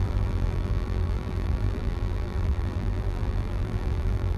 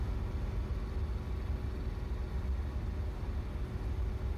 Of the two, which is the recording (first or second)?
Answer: second